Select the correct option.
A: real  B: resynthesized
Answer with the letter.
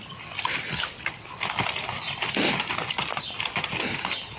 A